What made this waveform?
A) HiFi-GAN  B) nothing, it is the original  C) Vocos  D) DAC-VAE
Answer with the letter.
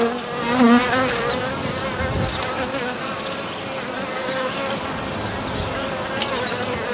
B